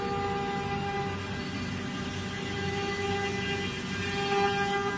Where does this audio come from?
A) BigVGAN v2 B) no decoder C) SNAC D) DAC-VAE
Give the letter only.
B